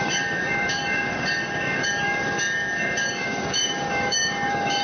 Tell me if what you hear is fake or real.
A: fake